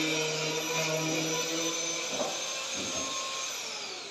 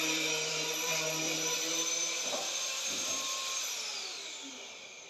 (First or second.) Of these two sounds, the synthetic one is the second